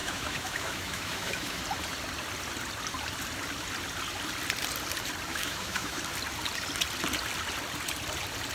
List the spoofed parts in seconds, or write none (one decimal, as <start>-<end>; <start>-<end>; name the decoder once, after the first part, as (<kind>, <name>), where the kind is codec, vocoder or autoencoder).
0.0-1.6 (autoencoder, DAC-VAE); 5.3-6.0